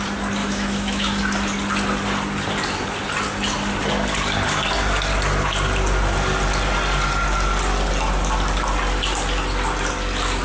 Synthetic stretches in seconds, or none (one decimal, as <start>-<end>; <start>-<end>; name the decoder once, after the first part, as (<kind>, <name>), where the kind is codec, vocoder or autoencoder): 0.4-1.2 (autoencoder, DAC-VAE)